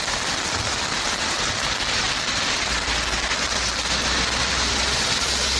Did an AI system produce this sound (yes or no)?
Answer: no